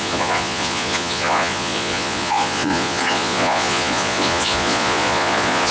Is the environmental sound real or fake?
fake